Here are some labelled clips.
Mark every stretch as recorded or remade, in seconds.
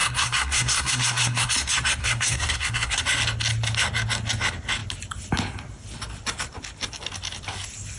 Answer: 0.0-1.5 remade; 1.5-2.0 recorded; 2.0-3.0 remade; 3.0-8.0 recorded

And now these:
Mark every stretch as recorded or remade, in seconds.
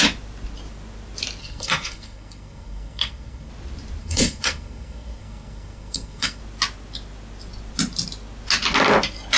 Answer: 0.0-1.4 recorded; 1.4-3.5 remade; 3.5-4.0 recorded; 4.0-6.4 remade; 6.4-9.4 recorded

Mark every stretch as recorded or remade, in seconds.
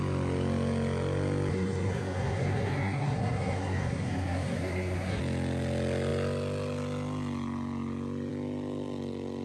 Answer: 0.0-1.5 recorded; 1.5-5.2 remade; 5.2-9.4 recorded